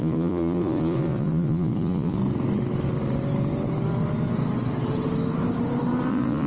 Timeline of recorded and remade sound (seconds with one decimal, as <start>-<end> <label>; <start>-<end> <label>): 0.0-2.2 remade; 2.2-6.1 recorded; 6.1-6.5 remade